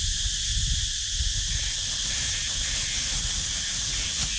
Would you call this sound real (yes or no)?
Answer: yes